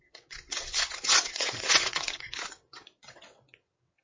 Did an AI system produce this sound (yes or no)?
yes